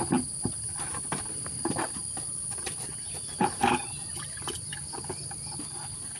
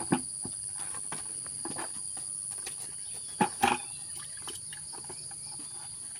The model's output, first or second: first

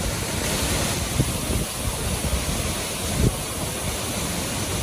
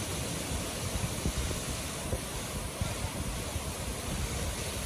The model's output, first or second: second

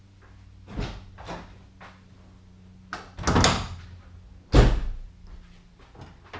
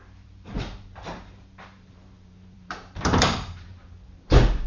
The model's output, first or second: second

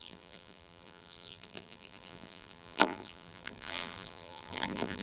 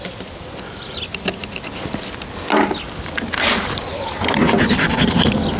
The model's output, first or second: first